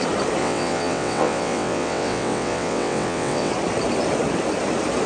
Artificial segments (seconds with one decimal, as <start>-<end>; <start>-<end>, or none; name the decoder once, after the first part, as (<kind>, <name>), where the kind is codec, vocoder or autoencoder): 0.4-3.5 (vocoder, WaveNeXt)